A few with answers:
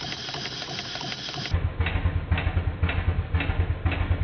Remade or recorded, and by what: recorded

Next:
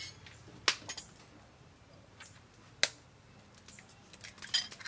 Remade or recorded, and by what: recorded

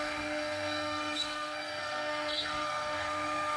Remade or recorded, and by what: remade, codec, SNAC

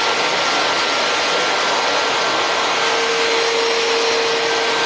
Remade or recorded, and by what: recorded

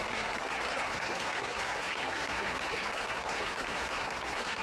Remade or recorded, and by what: remade, codec, SNAC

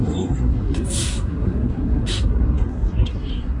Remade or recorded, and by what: remade, codec, SNAC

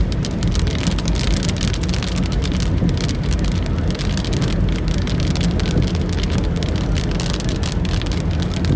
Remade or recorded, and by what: recorded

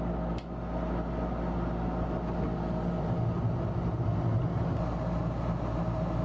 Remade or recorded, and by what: recorded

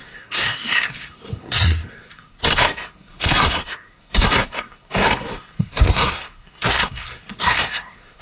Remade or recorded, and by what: remade, codec, SNAC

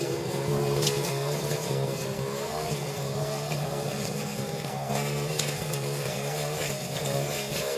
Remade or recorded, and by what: remade, codec, SNAC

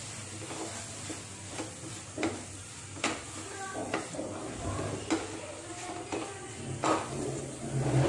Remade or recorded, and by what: recorded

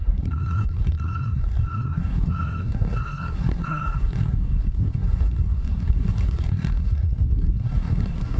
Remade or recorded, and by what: remade, codec, SNAC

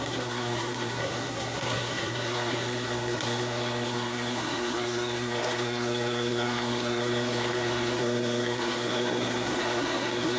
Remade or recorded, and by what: remade, codec, SNAC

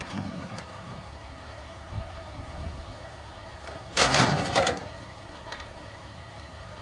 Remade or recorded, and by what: remade, codec, SNAC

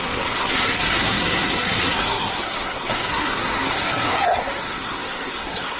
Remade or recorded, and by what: remade, codec, SNAC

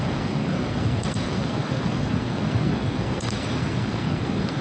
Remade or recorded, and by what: remade, codec, SNAC